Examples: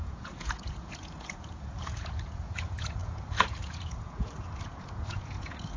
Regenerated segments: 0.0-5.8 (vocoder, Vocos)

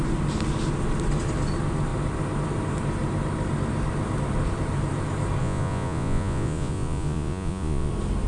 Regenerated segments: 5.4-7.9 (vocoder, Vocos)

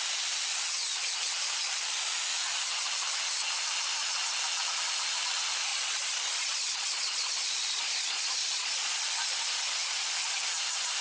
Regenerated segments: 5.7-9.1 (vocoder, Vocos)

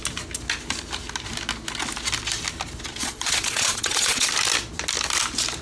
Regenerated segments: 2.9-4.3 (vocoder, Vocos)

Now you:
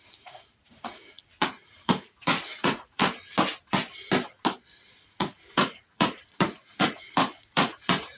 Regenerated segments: 0.0-3.0 (vocoder, Vocos); 4.8-8.2